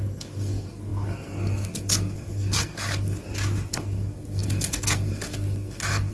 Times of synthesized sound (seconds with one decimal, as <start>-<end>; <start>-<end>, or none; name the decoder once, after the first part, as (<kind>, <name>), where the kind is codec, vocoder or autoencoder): 0.0-3.2 (codec, SNAC); 3.7-6.1